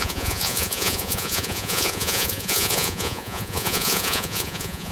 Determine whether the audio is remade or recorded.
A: remade